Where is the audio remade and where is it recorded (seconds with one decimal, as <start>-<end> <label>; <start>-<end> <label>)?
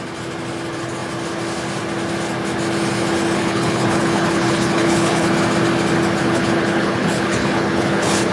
0.0-3.4 recorded; 3.4-5.3 remade; 5.3-6.2 recorded; 6.2-8.3 remade